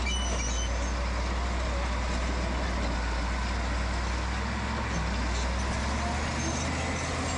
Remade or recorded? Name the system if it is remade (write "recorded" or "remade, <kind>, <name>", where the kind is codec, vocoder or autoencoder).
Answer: recorded